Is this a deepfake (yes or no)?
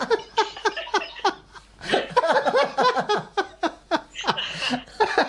no